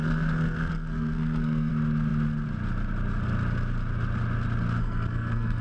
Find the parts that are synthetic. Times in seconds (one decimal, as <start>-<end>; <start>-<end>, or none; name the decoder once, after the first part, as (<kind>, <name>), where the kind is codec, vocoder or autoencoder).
0.0-1.7 (codec, SNAC); 4.8-5.6